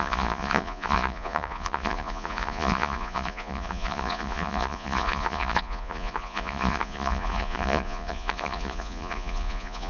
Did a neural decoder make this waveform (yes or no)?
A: yes